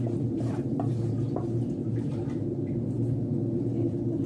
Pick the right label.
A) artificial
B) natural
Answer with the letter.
A